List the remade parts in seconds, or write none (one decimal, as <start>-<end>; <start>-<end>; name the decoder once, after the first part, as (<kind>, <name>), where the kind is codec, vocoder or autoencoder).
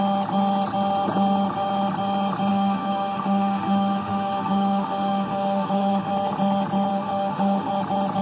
2.5-6.1 (autoencoder, DAC-VAE); 6.9-7.7